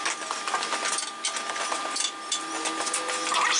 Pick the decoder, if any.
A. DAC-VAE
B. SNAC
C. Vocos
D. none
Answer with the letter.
D